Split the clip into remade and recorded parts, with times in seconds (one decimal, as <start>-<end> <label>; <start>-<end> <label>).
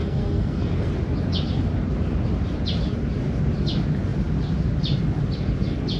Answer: 0.0-0.9 remade; 0.9-6.0 recorded